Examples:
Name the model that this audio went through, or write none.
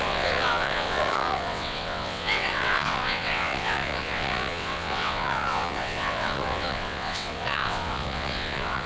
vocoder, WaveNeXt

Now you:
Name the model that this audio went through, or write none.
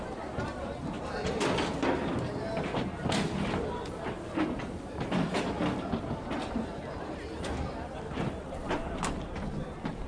none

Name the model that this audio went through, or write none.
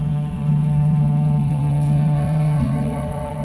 vocoder, WaveNeXt